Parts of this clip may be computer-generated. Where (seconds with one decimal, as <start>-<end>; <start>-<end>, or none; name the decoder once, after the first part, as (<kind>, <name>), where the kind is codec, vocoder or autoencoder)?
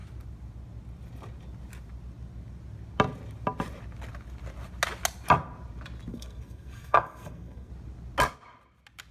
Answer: 6.1-7.7 (codec, SNAC)